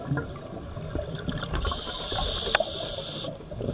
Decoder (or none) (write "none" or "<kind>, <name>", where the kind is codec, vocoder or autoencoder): none